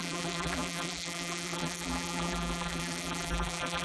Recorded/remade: remade